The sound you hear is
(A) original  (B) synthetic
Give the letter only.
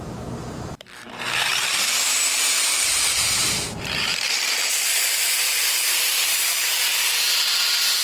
B